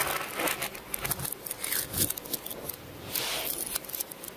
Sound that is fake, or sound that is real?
real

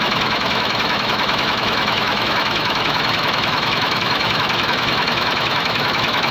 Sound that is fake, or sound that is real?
fake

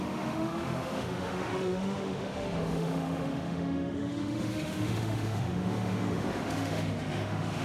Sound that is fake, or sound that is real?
fake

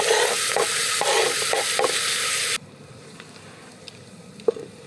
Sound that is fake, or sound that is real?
real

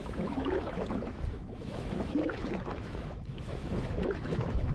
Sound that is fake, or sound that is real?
fake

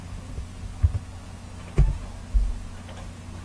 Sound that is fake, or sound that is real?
real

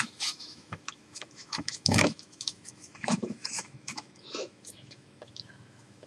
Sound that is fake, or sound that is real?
fake